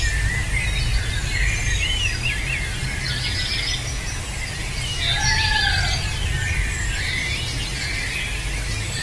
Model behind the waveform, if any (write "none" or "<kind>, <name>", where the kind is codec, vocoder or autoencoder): none